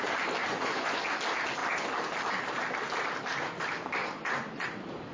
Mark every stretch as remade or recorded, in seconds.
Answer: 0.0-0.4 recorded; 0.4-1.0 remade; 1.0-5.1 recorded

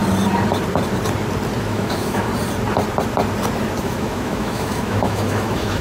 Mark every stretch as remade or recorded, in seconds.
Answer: 0.0-1.6 recorded; 1.6-2.3 remade; 2.3-3.8 recorded; 3.8-5.8 remade

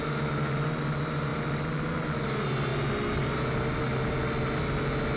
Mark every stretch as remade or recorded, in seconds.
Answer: 0.0-5.2 recorded

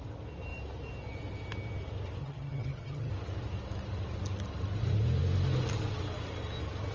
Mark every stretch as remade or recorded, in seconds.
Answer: 0.0-2.2 recorded; 2.2-3.1 remade; 3.1-6.9 recorded